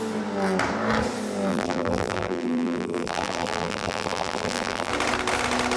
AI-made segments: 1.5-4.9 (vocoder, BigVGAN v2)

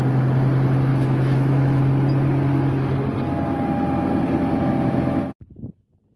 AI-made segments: 0.9-1.8 (autoencoder, DAC-VAE)

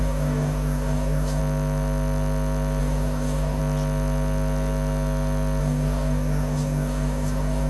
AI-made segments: 0.0-1.4 (codec, DAC); 2.8-3.6; 5.6-7.7